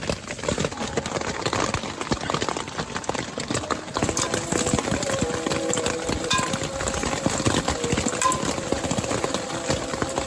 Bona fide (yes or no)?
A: yes